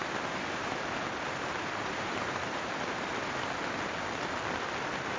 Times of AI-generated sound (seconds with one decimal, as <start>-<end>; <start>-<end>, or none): 0.0-3.1